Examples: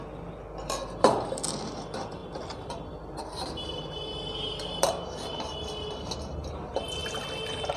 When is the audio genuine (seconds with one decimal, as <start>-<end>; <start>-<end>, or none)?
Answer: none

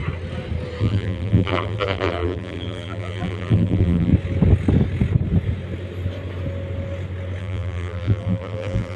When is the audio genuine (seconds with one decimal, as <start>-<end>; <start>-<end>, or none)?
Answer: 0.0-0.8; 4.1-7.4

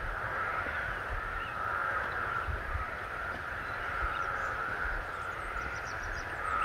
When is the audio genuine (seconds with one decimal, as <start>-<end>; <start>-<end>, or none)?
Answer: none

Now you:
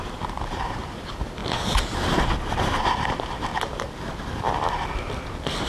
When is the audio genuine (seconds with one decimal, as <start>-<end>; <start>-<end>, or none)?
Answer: 1.4-2.6; 3.5-5.7

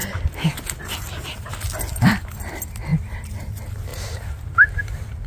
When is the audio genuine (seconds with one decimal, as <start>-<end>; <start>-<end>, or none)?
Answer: 0.0-3.9; 4.8-5.3